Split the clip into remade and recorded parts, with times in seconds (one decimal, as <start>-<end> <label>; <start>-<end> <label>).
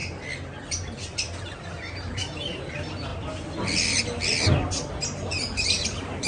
0.0-2.1 recorded; 2.1-3.1 remade; 3.1-4.9 recorded; 4.9-6.3 remade